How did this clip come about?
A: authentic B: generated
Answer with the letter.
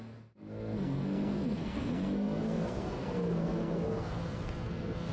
B